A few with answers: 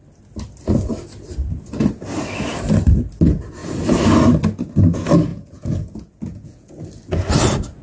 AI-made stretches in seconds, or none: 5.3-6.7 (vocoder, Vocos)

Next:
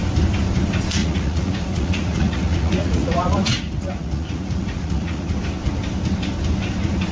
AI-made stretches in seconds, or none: 1.0-5.3 (vocoder, Vocos)

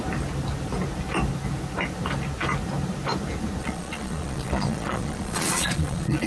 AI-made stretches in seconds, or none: 3.6-6.3 (vocoder, Vocos)

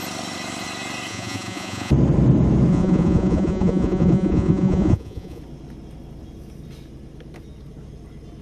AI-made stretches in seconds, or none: 1.1-1.9 (vocoder, Vocos); 2.7-5.4

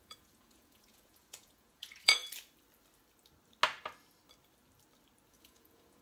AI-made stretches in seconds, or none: 0.0-2.2 (vocoder, Vocos); 5.3-6.0

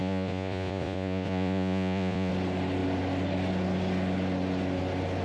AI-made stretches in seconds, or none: 0.0-2.3 (vocoder, Vocos)